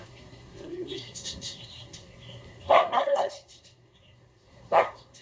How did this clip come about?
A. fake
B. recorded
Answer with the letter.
A